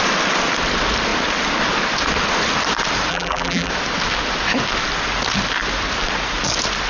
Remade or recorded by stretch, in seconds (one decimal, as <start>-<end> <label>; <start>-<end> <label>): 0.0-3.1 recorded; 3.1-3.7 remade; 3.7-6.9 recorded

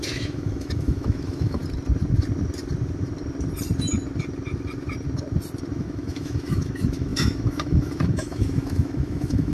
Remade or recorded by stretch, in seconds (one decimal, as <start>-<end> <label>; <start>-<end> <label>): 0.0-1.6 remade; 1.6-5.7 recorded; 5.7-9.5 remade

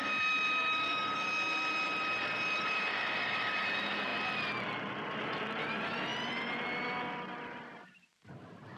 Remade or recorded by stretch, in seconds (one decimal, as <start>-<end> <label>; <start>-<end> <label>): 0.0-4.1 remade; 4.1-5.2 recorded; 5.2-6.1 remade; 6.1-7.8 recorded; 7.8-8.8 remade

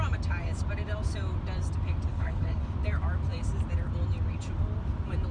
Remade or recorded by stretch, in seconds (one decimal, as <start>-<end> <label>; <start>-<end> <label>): 0.0-2.1 recorded; 2.1-2.6 remade; 2.6-5.3 recorded

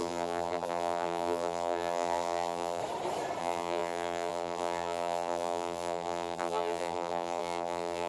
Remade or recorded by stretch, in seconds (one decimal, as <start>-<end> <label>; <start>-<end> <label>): 0.0-2.8 remade; 2.8-3.4 recorded; 3.4-8.1 remade